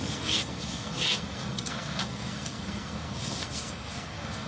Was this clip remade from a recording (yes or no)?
yes